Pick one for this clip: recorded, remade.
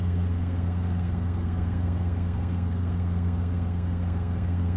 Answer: remade